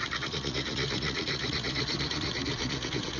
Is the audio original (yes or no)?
no